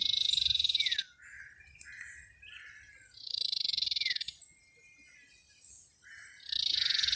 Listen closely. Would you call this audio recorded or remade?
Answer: recorded